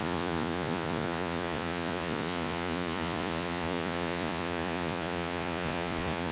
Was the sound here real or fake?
fake